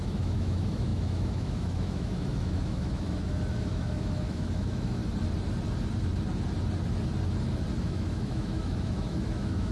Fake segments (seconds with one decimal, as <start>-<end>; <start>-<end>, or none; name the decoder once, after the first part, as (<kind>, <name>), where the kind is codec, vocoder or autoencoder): 0.0-5.0 (autoencoder, DAC-VAE); 7.8-9.7